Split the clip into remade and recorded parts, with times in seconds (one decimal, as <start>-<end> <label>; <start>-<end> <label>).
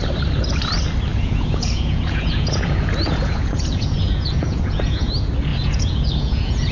0.0-1.1 recorded; 1.1-5.1 remade; 5.1-5.5 recorded; 5.5-6.7 remade